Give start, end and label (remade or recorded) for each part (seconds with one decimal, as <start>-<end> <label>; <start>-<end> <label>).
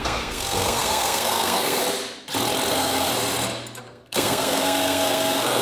0.0-1.8 remade; 1.8-2.7 recorded; 2.7-3.1 remade; 3.1-3.8 recorded; 3.8-5.6 remade